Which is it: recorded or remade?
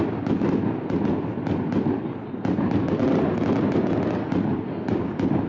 recorded